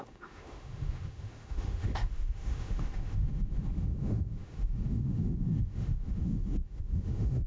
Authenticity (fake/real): fake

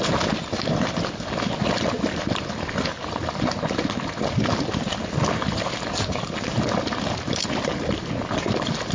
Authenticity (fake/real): real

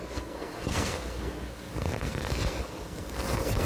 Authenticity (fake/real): fake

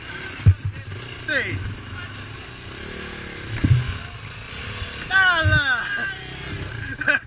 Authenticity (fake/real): real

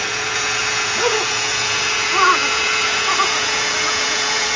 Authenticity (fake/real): fake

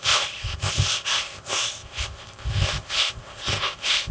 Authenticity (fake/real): fake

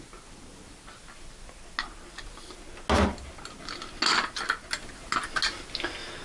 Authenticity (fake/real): real